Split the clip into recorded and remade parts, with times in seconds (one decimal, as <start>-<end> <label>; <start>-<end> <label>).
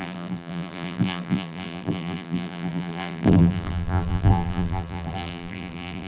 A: 0.0-6.1 remade